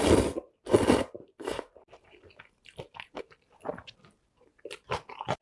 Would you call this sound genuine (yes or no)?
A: yes